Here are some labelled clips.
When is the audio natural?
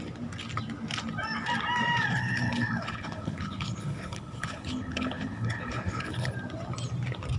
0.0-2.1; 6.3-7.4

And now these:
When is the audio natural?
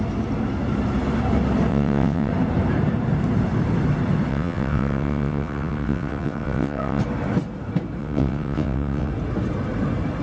0.0-1.7; 2.3-4.3; 7.0-8.0; 9.1-10.2